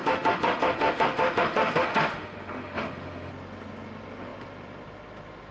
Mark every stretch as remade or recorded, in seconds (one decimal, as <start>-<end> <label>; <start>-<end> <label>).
0.0-3.3 remade; 3.3-5.5 recorded